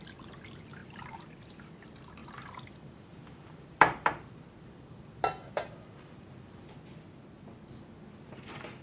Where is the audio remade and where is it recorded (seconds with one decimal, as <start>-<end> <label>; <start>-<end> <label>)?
0.0-2.2 recorded; 2.2-6.5 remade; 6.5-8.8 recorded